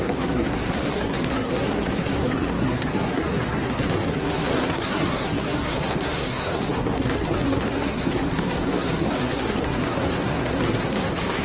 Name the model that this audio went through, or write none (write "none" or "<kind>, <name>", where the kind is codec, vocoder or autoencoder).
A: codec, SNAC